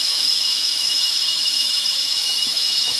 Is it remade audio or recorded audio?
remade